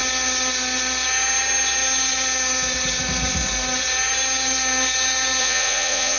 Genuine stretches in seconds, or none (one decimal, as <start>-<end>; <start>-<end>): 0.0-5.4

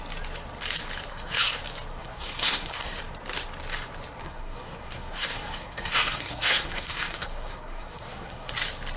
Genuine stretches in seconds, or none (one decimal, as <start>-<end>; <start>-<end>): 0.0-1.1; 1.6-2.0; 3.0-4.2; 8.5-9.0

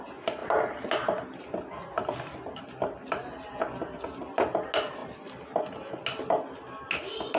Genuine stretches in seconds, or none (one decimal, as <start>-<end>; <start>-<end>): 0.0-7.4

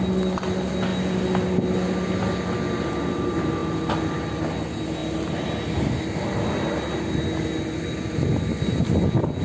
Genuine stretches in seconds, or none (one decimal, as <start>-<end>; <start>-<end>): 0.0-9.4

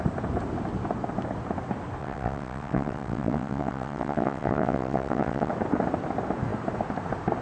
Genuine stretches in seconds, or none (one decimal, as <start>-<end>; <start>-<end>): 0.0-2.0; 5.5-7.4